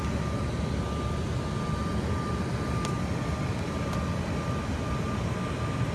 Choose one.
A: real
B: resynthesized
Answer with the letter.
A